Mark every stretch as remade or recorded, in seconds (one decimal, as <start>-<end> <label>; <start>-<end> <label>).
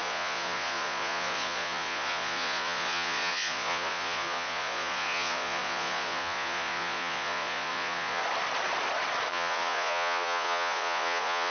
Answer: 0.0-8.2 remade; 8.2-9.3 recorded; 9.3-11.5 remade